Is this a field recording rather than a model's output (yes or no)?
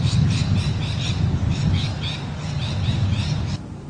yes